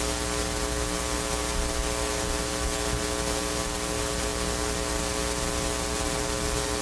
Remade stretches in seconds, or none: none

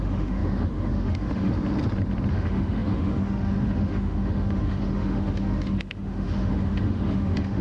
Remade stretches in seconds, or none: 0.0-1.5 (autoencoder, DAC-VAE); 2.3-7.6

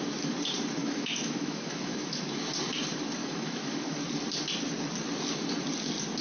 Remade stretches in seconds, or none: 0.8-2.2 (autoencoder, DAC-VAE); 3.2-4.0

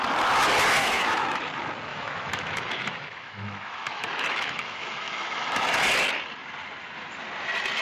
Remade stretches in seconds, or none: 0.8-1.4 (autoencoder, DAC-VAE); 1.9-5.5